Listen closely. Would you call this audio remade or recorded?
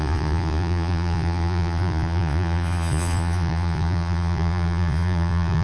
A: remade